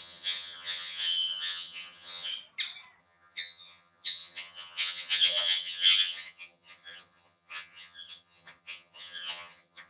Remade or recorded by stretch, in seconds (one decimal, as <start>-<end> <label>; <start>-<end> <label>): 0.0-2.3 remade; 2.3-3.0 recorded; 3.0-9.9 remade